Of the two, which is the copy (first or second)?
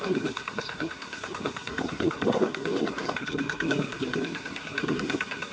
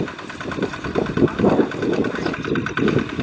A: first